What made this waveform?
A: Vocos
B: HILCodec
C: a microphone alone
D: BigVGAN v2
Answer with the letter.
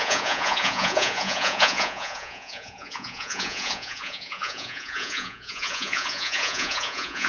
A